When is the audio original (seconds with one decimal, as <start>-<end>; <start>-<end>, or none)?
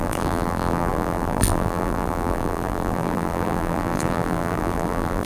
none